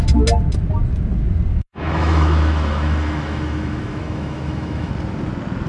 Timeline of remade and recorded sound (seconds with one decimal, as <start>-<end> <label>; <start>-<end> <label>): 0.0-1.5 recorded; 1.5-4.9 remade; 4.9-5.7 recorded